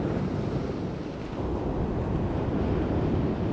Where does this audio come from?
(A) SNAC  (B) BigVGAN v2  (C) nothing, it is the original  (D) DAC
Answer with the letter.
C